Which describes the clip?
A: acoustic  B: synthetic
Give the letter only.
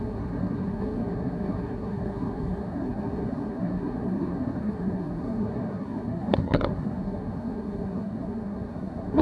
B